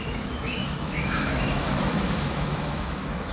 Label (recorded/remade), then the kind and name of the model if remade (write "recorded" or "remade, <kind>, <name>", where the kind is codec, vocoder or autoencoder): remade, autoencoder, DAC-VAE